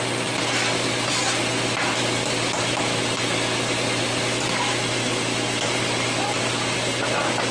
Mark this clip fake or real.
real